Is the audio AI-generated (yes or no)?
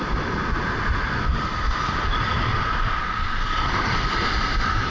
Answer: no